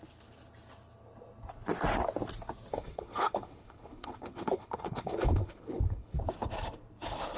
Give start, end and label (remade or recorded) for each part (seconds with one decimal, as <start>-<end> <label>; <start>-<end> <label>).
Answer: 0.0-2.7 recorded; 2.7-6.2 remade; 6.2-7.4 recorded